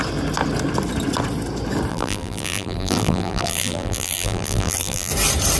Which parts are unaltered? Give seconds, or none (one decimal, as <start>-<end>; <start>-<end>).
0.0-1.9; 5.1-5.6